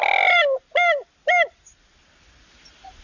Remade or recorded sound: recorded